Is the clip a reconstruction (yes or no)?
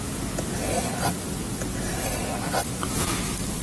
no